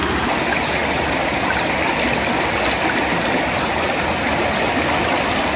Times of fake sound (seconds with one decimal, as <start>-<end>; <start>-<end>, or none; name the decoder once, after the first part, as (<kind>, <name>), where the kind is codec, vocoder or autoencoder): none